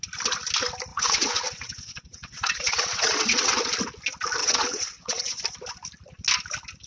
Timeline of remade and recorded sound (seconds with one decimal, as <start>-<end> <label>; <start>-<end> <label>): 0.0-0.9 recorded; 0.9-3.7 remade; 3.7-4.4 recorded; 4.4-5.4 remade; 5.4-6.9 recorded